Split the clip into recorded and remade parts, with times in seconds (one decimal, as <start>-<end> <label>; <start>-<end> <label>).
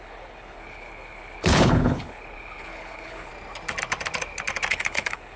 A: 0.0-3.3 remade; 3.3-4.7 recorded; 4.7-5.4 remade